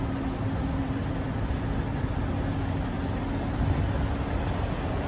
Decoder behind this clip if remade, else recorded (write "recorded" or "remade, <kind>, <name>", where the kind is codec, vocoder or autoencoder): recorded